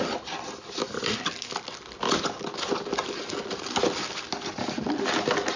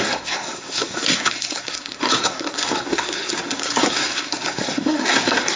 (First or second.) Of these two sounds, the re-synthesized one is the second